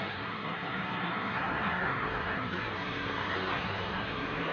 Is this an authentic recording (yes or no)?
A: no